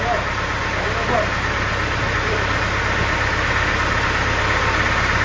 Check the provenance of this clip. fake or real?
real